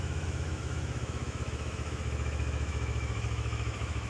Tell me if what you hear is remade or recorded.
remade